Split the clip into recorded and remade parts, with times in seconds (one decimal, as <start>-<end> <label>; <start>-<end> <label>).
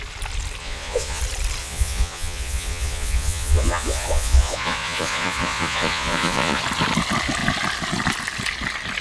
0.0-0.6 recorded; 0.6-1.2 remade; 1.2-1.6 recorded; 1.6-6.6 remade; 6.6-9.0 recorded